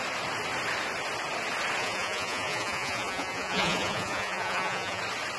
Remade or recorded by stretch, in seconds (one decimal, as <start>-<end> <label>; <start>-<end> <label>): 0.0-1.8 recorded; 1.8-5.0 remade; 5.0-5.4 recorded

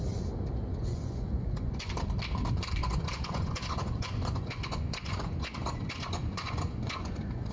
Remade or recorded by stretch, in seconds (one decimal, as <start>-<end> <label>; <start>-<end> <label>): 0.0-0.7 recorded; 0.7-1.9 remade; 1.9-2.8 recorded; 2.8-7.5 remade